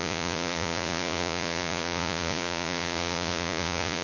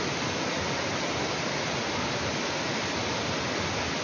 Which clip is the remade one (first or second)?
first